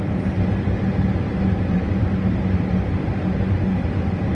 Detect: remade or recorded remade